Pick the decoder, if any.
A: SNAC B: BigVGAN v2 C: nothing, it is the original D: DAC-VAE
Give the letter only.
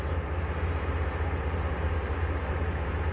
C